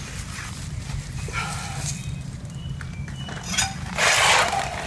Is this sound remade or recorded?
recorded